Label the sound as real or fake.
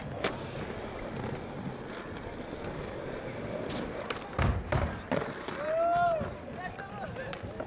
real